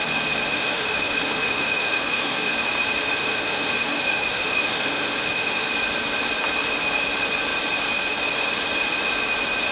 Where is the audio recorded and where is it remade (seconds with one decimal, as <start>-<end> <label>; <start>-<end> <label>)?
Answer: 0.0-0.5 recorded; 0.5-2.5 remade; 2.5-3.2 recorded; 3.2-5.7 remade; 5.7-9.7 recorded